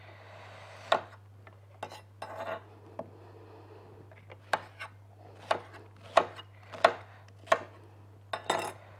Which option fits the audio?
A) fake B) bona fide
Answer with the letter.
B